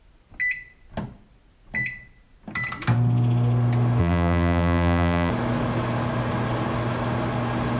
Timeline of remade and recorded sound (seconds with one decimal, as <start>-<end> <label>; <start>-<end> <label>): 0.0-4.0 recorded; 4.0-5.3 remade; 5.3-7.8 recorded